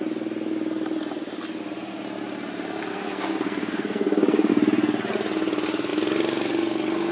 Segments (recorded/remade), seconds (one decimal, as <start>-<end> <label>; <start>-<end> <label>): 0.0-2.9 recorded; 2.9-4.5 remade; 4.5-7.1 recorded